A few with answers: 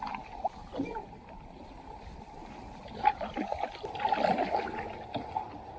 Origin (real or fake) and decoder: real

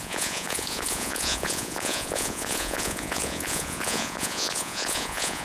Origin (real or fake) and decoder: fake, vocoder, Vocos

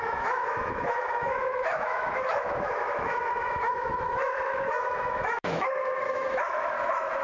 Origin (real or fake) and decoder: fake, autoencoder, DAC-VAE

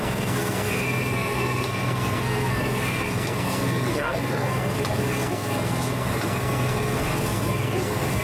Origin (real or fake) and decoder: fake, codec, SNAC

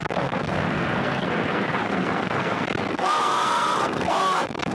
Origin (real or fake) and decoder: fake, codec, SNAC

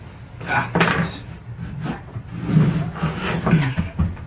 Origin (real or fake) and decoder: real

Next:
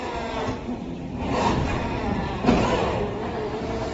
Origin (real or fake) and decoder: fake, vocoder, BigVGAN v2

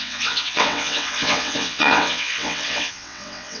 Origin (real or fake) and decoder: fake, vocoder, WaveNeXt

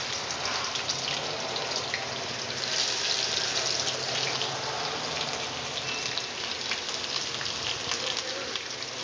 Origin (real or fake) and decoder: real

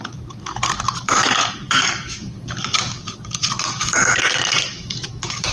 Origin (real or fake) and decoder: fake, codec, DAC